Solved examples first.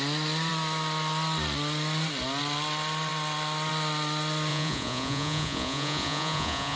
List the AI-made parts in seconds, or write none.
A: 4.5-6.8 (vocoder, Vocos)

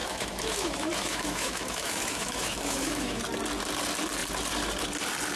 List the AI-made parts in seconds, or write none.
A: 0.0-3.2 (autoencoder, DAC-VAE)

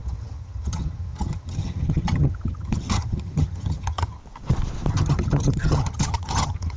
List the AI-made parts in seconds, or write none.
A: 0.0-4.2 (vocoder, HiFi-GAN); 4.9-6.8

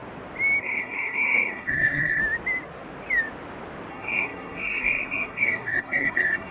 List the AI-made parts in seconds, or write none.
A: 0.6-2.2 (codec, SNAC); 3.9-6.5